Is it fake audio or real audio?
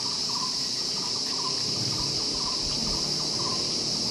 real